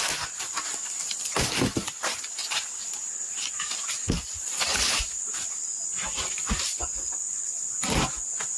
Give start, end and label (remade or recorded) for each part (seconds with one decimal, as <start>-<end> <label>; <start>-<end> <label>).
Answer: 0.0-2.4 recorded; 2.4-3.1 remade; 3.1-8.6 recorded